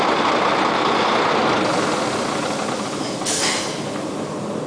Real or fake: real